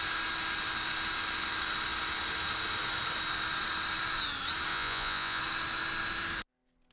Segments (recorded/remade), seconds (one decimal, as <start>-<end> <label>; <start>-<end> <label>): 0.0-4.7 recorded; 4.7-5.4 remade; 5.4-6.9 recorded